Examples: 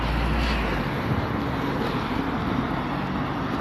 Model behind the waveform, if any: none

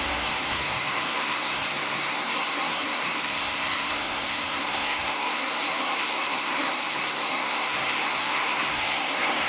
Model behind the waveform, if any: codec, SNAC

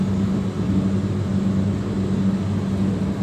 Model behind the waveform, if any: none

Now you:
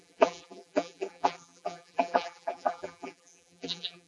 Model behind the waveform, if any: vocoder, BigVGAN v2